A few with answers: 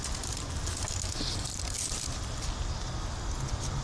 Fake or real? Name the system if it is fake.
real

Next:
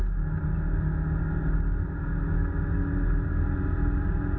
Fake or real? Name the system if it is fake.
real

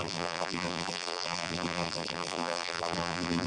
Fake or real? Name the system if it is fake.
fake, vocoder, BigVGAN v2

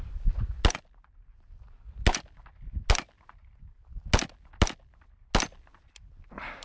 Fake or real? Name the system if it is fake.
real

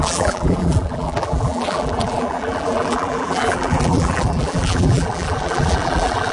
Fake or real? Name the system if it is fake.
fake, vocoder, BigVGAN v2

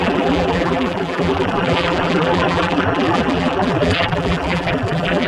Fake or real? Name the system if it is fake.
fake, vocoder, BigVGAN v2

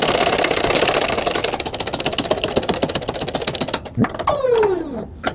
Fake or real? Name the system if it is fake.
real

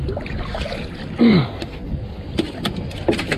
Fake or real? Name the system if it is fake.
real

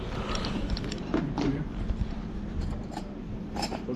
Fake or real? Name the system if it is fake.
fake, vocoder, BigVGAN v2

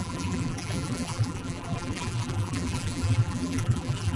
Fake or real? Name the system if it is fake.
fake, vocoder, BigVGAN v2